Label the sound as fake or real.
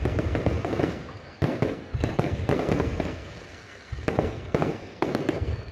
fake